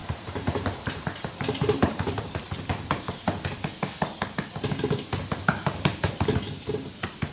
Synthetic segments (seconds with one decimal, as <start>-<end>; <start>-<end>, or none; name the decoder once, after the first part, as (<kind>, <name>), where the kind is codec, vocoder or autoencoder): 0.0-2.7 (vocoder, BigVGAN v2)